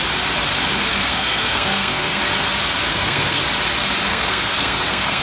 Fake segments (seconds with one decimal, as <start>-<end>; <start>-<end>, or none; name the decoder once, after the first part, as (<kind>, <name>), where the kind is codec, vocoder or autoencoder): 0.9-2.2 (codec, SNAC); 2.9-3.4; 4.1-5.2